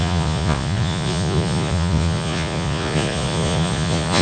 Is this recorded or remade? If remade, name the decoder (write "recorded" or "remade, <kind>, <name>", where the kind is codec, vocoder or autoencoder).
remade, vocoder, Vocos